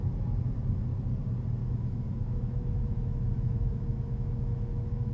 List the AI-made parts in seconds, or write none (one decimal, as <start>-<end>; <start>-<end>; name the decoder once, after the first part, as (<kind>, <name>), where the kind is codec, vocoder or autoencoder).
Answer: 1.6-5.1 (autoencoder, DAC-VAE)

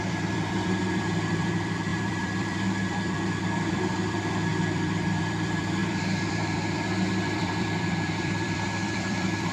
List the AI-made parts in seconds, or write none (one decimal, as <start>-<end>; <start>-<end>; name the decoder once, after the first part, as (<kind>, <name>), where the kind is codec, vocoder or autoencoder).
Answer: 0.0-9.5 (vocoder, BigVGAN v2)

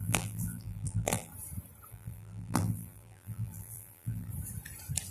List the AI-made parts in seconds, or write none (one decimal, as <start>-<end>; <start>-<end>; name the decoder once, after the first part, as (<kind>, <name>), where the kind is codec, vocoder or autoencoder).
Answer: 0.0-1.3 (vocoder, BigVGAN v2); 1.9-4.3

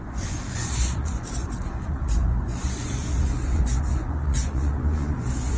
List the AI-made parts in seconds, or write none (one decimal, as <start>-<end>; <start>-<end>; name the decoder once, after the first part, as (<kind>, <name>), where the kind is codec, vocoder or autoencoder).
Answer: 0.0-5.6 (vocoder, Vocos)

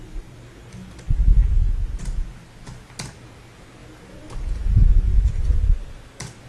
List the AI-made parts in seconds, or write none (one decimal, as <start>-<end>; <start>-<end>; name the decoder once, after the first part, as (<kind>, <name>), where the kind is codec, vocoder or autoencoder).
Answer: none